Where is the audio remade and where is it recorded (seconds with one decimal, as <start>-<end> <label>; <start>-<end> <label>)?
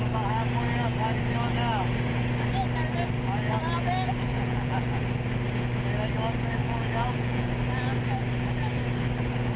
0.0-4.3 recorded; 4.3-5.0 remade; 5.0-6.6 recorded; 6.6-7.5 remade; 7.5-9.6 recorded